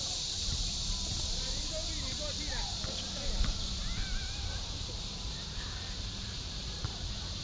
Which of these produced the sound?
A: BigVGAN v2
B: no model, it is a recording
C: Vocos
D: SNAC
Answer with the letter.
A